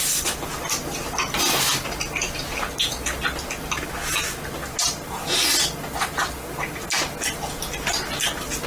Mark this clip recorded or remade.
recorded